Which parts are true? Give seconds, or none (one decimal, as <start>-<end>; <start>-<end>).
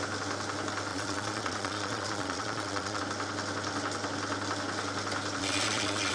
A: 0.0-0.9; 3.0-5.4